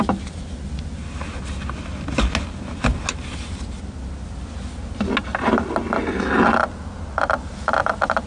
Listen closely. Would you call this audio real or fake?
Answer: real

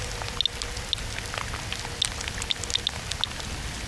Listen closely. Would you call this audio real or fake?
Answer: real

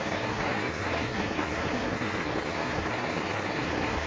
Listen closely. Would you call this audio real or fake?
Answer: fake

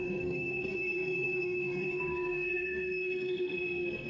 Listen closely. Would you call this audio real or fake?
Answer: fake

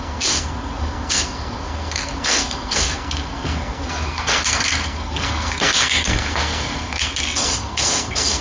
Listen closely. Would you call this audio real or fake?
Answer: fake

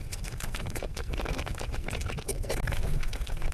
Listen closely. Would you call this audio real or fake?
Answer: fake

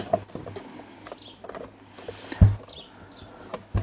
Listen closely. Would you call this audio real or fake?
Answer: real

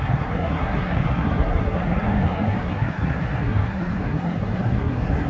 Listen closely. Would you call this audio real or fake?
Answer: fake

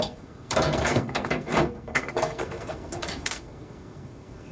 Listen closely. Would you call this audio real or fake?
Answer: fake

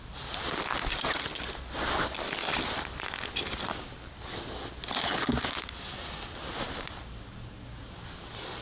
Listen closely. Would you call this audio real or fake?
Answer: real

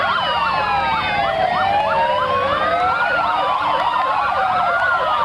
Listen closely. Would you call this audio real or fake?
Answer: real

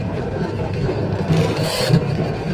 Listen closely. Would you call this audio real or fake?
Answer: fake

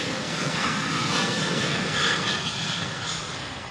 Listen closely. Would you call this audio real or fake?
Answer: fake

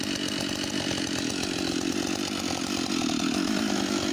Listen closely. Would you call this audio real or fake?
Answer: real